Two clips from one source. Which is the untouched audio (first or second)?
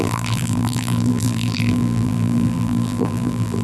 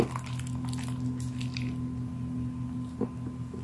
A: second